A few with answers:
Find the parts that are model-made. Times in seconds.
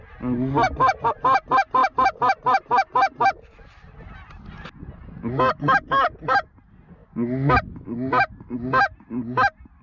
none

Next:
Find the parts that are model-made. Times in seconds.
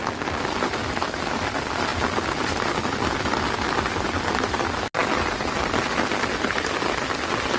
none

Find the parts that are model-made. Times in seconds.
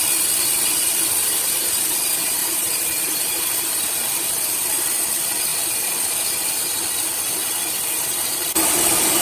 2.4-3.4 (vocoder, BigVGAN v2)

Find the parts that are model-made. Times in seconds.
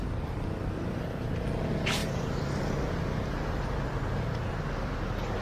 none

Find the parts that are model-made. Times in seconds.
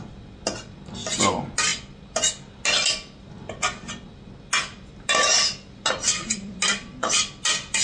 6.7-7.3 (vocoder, BigVGAN v2)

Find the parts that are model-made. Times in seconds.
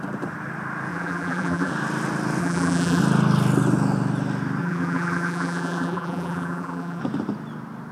0.9-1.7 (vocoder, BigVGAN v2); 2.4-3.0; 4.6-7.0